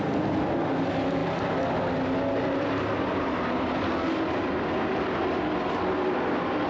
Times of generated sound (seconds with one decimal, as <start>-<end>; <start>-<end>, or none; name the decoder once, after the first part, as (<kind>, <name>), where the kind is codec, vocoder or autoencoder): none